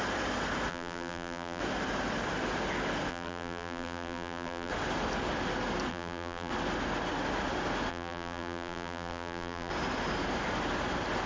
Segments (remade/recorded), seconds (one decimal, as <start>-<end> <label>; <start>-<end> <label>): 0.0-0.7 recorded; 0.7-1.6 remade; 1.6-3.1 recorded; 3.1-4.7 remade; 4.7-5.9 recorded; 5.9-6.5 remade; 6.5-7.9 recorded; 7.9-9.7 remade; 9.7-11.3 recorded